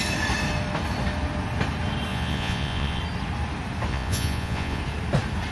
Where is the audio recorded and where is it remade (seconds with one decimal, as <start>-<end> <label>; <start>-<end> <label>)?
0.0-2.1 recorded; 2.1-3.0 remade; 3.0-3.9 recorded; 3.9-4.8 remade; 4.8-5.5 recorded